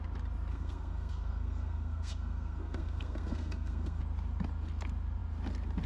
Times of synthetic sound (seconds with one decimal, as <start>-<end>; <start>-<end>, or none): 0.5-4.0